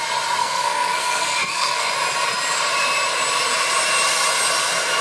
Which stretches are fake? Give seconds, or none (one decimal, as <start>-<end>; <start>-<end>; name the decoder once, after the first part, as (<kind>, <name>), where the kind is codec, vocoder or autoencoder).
0.4-1.9 (codec, SNAC)